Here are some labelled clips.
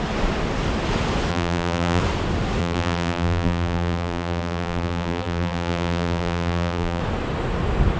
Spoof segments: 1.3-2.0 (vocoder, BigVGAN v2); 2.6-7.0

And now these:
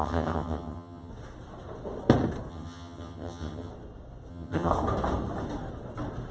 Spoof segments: 0.0-1.1 (vocoder, HiFi-GAN); 2.5-3.7; 4.3-4.7

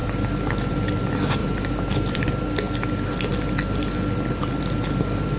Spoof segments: 0.0-0.7 (vocoder, BigVGAN v2); 1.4-2.2

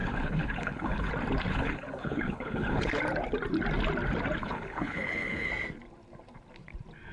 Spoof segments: 0.0-1.1 (codec, HILCodec); 1.5-3.0; 4.4-5.5